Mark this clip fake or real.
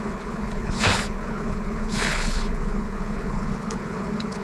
fake